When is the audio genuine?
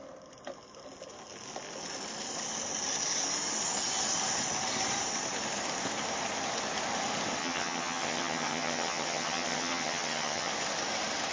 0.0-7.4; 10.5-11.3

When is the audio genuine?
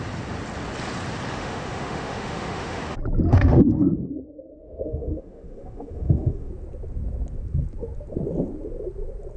0.0-1.4; 2.8-3.3; 6.5-9.4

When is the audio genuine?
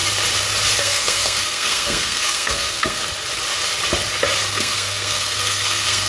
0.0-0.8; 3.0-4.5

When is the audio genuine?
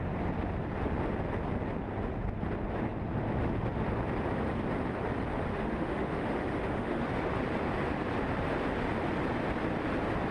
0.0-5.5; 7.1-10.3